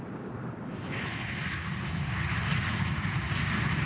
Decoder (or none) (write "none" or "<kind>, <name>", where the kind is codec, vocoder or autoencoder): none